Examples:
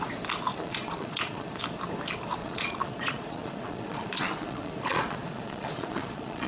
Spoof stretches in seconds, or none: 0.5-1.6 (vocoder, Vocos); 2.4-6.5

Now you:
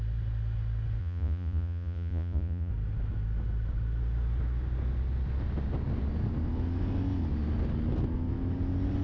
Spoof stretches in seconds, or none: 1.0-2.7 (vocoder, Vocos)

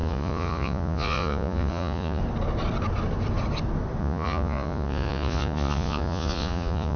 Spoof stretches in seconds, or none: 0.0-2.2 (vocoder, Vocos); 4.0-7.0

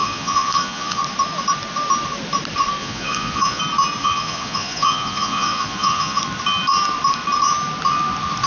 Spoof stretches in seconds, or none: 0.0-1.0 (vocoder, Vocos); 2.8-3.6; 4.0-6.2

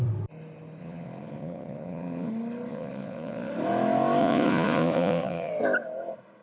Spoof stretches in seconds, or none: 0.8-2.3 (vocoder, Vocos); 2.7-3.5; 4.2-5.5

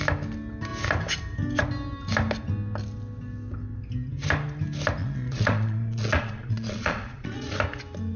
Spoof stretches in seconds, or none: 5.0-7.6 (vocoder, Vocos)